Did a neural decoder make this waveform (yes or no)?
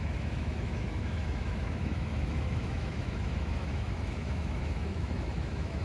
yes